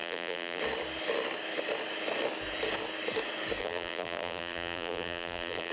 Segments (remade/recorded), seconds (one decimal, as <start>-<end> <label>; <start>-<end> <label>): 0.0-0.6 remade; 0.6-3.6 recorded; 3.6-5.7 remade